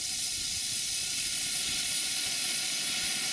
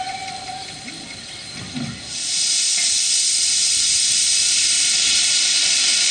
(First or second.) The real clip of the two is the second